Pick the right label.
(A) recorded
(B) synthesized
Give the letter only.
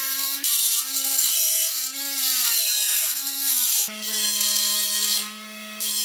B